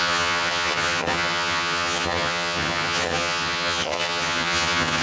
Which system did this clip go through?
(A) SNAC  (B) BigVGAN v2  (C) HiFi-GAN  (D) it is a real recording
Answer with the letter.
C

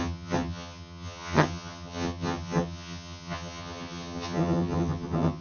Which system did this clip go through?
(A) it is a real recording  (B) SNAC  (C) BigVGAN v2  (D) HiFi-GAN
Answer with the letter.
D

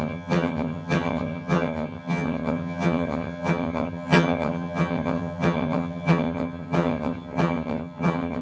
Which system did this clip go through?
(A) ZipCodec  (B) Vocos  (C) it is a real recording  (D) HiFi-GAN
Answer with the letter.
D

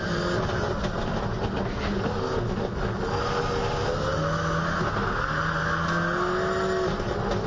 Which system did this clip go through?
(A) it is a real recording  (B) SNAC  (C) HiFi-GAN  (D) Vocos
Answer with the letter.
A